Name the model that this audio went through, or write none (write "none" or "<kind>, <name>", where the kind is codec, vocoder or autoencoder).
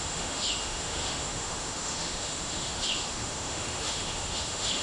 autoencoder, DAC-VAE